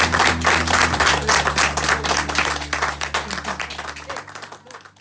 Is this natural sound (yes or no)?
yes